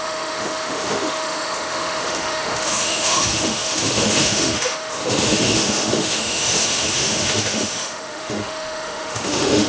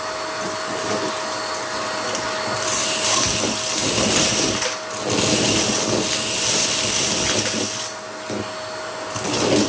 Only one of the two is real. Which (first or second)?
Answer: second